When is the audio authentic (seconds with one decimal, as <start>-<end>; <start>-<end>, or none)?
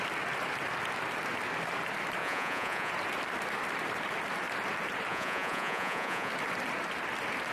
0.0-2.2; 2.9-5.1; 6.3-7.5